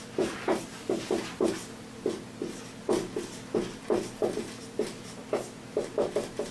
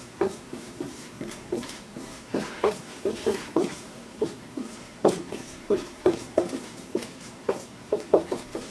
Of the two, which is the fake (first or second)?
second